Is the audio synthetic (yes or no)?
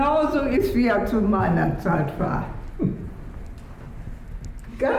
no